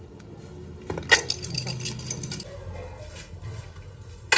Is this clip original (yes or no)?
yes